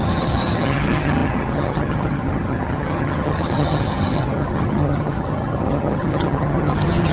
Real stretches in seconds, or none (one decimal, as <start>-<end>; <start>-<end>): none